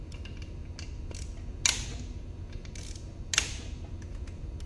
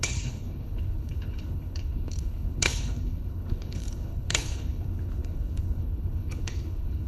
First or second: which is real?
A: first